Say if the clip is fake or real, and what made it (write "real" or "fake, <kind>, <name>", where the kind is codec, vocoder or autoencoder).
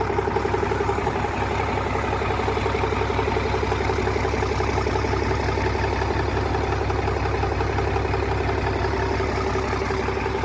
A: real